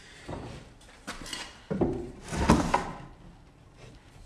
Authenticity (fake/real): real